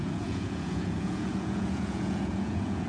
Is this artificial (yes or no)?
yes